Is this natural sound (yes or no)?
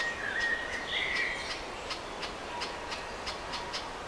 yes